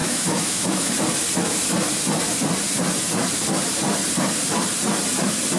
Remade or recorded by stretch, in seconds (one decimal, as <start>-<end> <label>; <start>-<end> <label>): 0.0-0.9 remade; 0.9-5.6 recorded

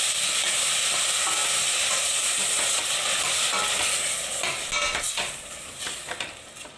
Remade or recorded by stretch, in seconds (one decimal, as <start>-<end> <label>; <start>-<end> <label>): 0.0-6.8 recorded

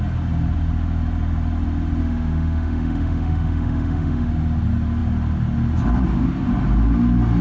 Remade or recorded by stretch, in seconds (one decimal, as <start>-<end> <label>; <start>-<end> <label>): 0.0-2.0 recorded; 2.0-4.3 remade; 4.3-7.4 recorded